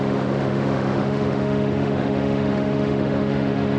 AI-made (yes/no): yes